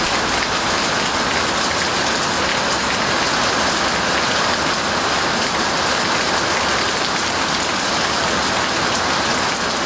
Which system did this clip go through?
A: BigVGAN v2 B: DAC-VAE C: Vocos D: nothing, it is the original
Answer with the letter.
D